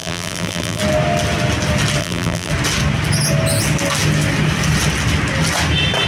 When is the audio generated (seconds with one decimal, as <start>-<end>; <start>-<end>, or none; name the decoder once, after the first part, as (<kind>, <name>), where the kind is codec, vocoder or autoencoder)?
0.0-0.8 (vocoder, BigVGAN v2); 2.0-2.5